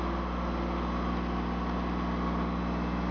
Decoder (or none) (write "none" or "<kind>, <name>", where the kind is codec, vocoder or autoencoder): none